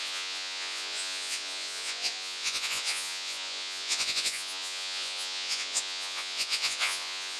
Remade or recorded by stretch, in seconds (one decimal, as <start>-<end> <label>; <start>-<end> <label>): 0.0-7.4 remade

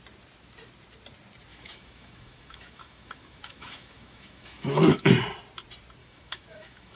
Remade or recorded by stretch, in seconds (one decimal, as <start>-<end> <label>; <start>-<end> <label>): 0.0-1.5 recorded; 1.5-5.1 remade; 5.1-6.0 recorded; 6.0-7.0 remade

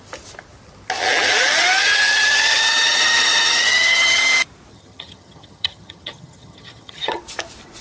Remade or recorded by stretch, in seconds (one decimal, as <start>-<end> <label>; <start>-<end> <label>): 0.0-1.8 recorded; 1.8-4.2 remade; 4.2-4.7 recorded; 4.7-7.2 remade; 7.2-7.8 recorded